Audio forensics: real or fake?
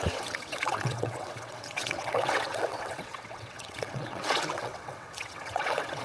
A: fake